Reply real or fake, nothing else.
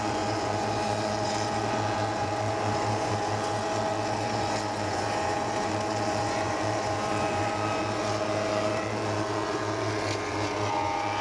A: fake